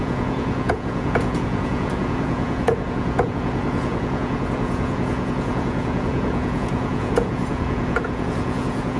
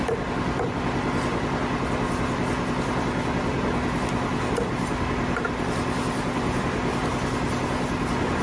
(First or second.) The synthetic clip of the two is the first